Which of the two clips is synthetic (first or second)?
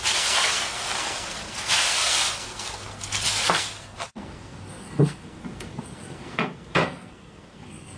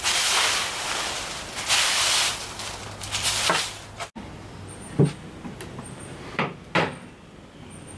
first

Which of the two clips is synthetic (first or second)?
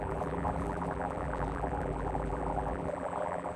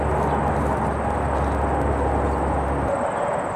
first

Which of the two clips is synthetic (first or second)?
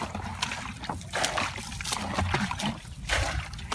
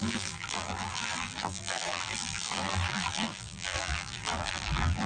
second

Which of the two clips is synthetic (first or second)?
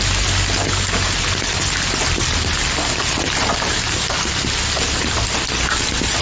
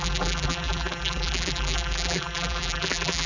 second